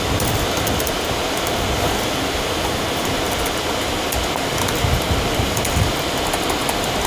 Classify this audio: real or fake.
real